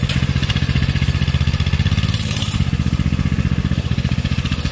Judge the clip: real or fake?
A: real